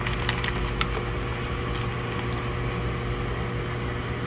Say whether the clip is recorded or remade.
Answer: recorded